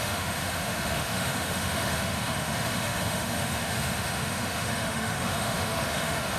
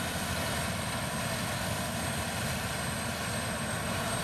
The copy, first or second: first